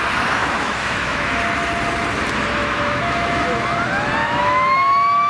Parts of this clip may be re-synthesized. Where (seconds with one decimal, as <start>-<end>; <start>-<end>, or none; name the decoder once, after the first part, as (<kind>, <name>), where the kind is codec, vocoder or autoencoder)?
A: 0.4-1.4 (autoencoder, DAC-VAE); 2.6-3.4; 4.2-5.3